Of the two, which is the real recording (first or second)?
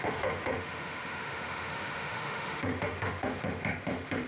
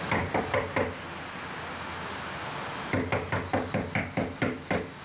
second